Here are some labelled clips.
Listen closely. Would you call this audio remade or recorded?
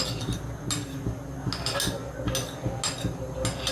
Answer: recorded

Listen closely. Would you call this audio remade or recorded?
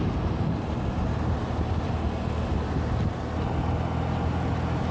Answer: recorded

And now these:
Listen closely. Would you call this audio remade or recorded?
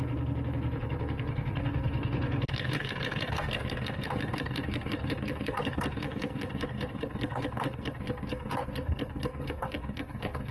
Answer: remade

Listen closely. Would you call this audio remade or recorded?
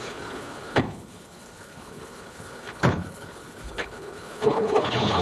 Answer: remade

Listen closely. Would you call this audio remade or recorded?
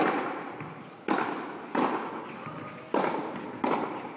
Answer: recorded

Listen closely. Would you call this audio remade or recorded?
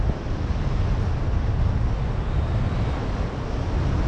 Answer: recorded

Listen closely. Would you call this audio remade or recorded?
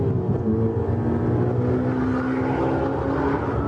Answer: recorded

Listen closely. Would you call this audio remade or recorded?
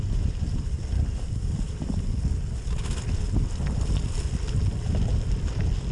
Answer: recorded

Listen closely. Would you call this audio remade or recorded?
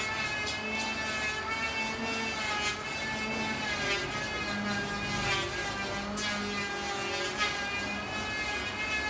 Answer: recorded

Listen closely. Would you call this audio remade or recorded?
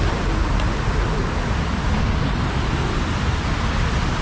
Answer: recorded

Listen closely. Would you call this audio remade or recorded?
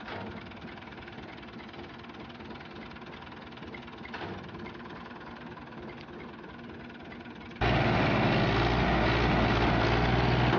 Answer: recorded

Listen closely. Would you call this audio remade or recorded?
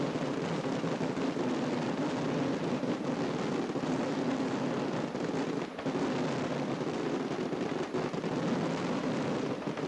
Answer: recorded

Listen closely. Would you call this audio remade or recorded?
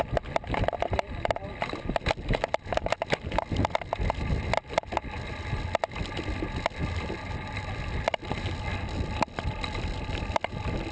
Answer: recorded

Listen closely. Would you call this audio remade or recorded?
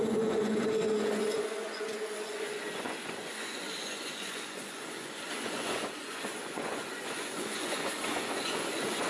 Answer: remade